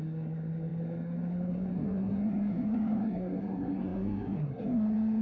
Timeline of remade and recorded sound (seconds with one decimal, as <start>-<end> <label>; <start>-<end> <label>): 0.0-5.2 remade